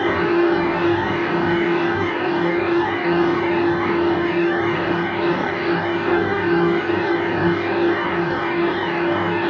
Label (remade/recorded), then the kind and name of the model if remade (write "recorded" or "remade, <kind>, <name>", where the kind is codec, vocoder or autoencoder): remade, codec, DAC